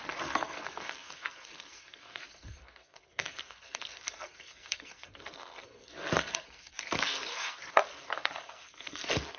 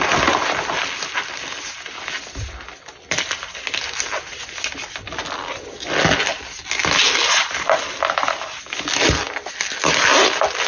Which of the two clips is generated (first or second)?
first